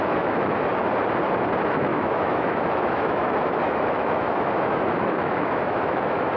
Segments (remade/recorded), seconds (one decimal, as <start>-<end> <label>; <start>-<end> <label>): 0.0-0.7 remade; 0.7-1.8 recorded; 1.8-6.4 remade